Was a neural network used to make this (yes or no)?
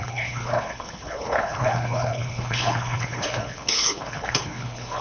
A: yes